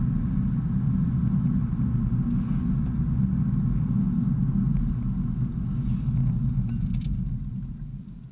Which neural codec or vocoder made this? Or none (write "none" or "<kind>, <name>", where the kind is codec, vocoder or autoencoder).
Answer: none